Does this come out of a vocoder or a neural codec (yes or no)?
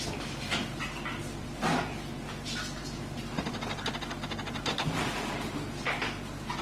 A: no